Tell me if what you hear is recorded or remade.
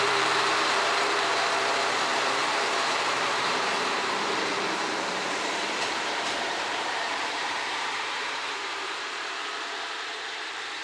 remade